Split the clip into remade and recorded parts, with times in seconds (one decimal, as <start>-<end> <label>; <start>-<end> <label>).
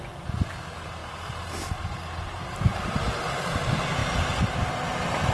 0.0-5.3 recorded